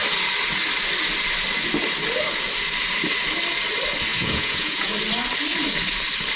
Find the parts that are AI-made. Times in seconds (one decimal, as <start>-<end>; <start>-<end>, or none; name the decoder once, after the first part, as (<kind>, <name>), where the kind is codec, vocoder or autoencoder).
4.1-4.9 (vocoder, Vocos)